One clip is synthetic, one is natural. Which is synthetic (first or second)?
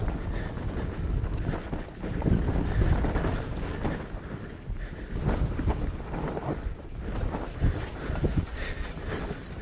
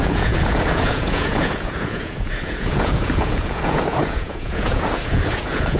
second